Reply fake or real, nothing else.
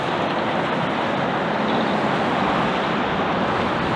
real